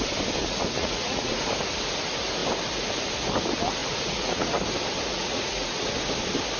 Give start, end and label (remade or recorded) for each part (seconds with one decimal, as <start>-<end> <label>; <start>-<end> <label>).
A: 0.0-0.4 recorded; 0.4-1.3 remade; 1.3-3.8 recorded; 3.8-4.5 remade; 4.5-5.1 recorded; 5.1-5.8 remade; 5.8-6.6 recorded